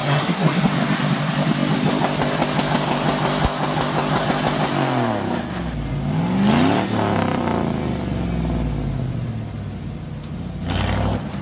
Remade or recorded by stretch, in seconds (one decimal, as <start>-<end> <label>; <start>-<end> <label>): 0.0-0.6 remade; 0.6-11.4 recorded